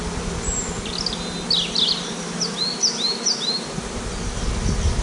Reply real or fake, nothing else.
real